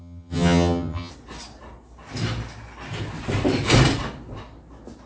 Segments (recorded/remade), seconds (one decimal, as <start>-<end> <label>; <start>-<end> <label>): 0.0-1.1 remade; 1.1-5.1 recorded

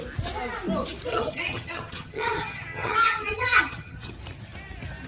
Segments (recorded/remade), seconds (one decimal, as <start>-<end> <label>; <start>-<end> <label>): 0.0-1.1 recorded; 1.1-4.1 remade; 4.1-5.1 recorded

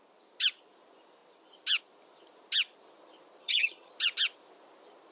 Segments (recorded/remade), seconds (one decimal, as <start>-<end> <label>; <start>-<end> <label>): 0.0-3.4 recorded; 3.4-3.9 remade; 3.9-5.1 recorded

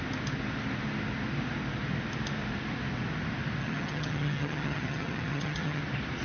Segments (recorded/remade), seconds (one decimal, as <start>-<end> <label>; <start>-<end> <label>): 0.0-3.6 recorded; 3.6-5.8 remade; 5.8-6.2 recorded

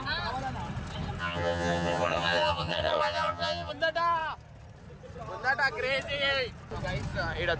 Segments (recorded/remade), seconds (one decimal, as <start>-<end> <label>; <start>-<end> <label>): 0.0-1.2 recorded; 1.2-3.7 remade; 3.7-7.6 recorded

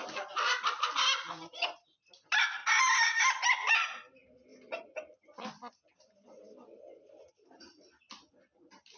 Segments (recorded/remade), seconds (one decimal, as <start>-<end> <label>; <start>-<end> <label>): 0.0-9.0 recorded

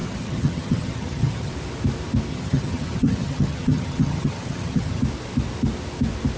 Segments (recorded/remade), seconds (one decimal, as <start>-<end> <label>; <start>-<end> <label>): 0.0-1.5 remade; 1.5-2.3 recorded; 2.3-5.0 remade; 5.0-6.4 recorded

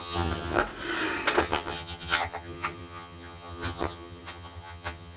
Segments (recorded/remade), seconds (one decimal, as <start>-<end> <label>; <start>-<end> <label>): 0.0-0.6 remade; 0.6-1.4 recorded; 1.4-5.2 remade